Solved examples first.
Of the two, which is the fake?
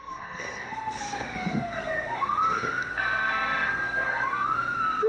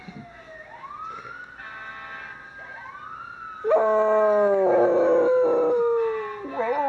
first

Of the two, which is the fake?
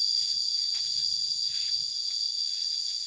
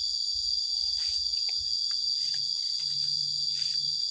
first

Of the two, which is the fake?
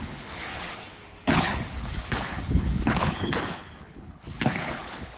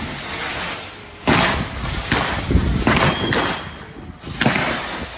first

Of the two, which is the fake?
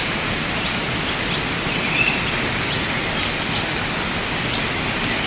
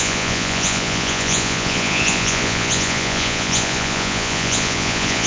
second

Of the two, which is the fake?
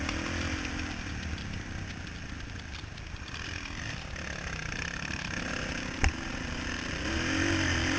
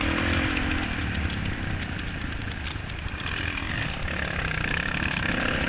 second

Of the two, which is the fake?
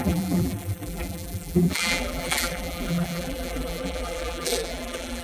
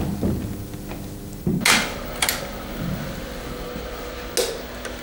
first